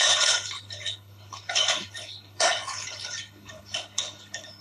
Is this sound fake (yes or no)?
yes